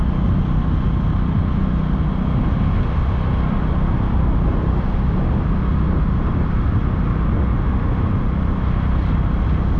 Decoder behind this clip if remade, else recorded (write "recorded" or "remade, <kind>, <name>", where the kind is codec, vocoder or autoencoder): recorded